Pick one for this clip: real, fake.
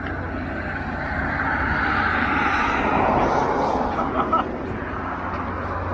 real